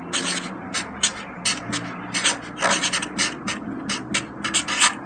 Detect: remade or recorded recorded